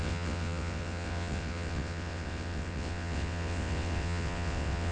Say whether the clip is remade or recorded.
remade